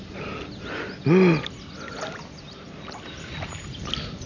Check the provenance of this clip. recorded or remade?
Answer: recorded